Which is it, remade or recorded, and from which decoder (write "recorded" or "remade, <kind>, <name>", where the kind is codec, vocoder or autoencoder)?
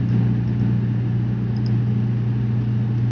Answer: recorded